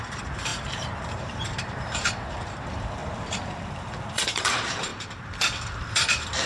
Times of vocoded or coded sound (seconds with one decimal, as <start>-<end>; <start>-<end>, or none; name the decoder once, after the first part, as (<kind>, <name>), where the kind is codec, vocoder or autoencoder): 0.0-4.9 (vocoder, BigVGAN v2); 5.9-6.5